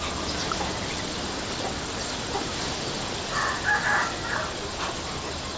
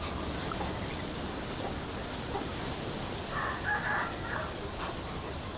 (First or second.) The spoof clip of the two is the second